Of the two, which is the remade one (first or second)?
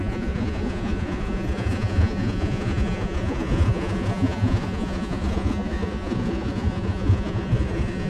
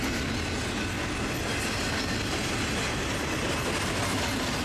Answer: first